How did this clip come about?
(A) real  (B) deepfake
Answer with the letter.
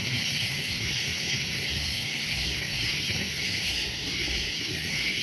B